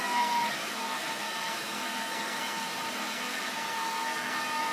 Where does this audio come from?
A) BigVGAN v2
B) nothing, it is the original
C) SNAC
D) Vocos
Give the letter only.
C